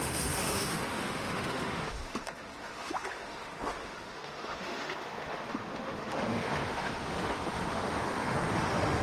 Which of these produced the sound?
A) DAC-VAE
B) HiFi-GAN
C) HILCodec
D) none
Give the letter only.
A